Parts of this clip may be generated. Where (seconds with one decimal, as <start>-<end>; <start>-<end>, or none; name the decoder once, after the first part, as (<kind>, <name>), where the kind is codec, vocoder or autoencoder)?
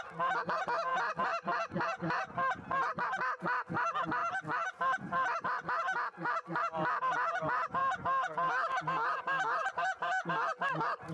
none